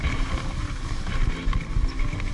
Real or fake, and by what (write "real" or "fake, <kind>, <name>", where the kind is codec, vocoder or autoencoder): real